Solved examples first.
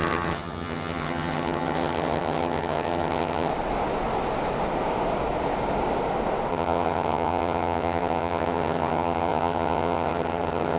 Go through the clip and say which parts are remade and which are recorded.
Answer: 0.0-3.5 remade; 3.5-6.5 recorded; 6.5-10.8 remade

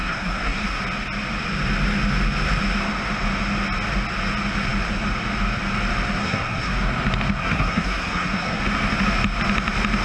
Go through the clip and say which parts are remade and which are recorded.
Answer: 0.0-0.8 remade; 0.8-6.2 recorded; 6.2-6.7 remade; 6.7-7.4 recorded; 7.4-8.6 remade; 8.6-10.0 recorded

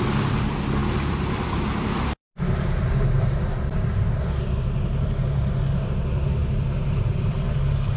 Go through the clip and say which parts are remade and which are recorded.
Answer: 0.0-0.8 recorded; 0.8-4.2 remade; 4.2-6.4 recorded; 6.4-8.0 remade

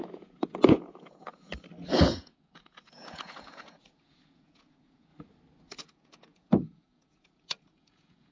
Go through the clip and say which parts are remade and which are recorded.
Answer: 0.0-1.5 remade; 1.5-2.0 recorded; 2.0-5.1 remade; 5.1-5.8 recorded; 5.8-8.3 remade

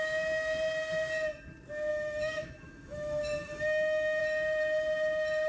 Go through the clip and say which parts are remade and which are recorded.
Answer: 0.0-1.9 recorded; 1.9-4.2 remade; 4.2-5.5 recorded